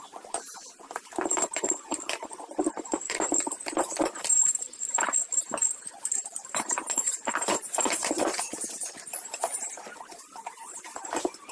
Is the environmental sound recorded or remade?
remade